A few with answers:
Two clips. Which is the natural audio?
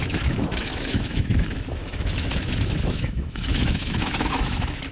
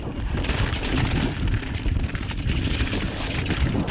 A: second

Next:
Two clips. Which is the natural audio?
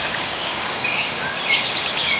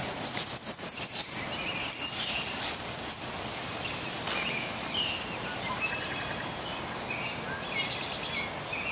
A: second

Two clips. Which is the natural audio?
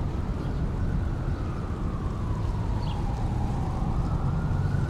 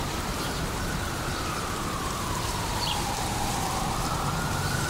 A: first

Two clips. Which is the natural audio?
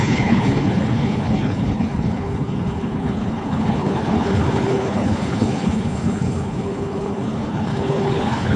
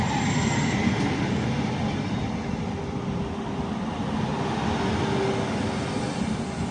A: second